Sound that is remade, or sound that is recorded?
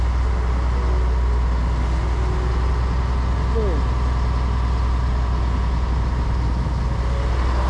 recorded